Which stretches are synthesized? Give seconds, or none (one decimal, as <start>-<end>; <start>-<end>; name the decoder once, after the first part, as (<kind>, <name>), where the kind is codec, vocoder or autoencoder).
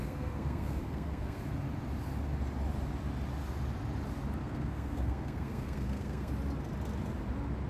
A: 0.0-1.4 (codec, SNAC); 4.4-6.3